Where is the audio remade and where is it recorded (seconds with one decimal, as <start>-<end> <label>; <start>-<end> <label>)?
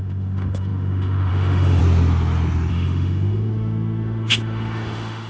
0.0-1.8 remade; 1.8-2.7 recorded; 2.7-5.3 remade